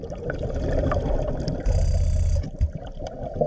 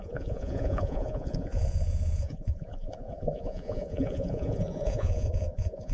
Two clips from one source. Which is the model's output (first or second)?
second